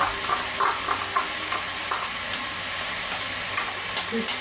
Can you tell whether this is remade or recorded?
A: recorded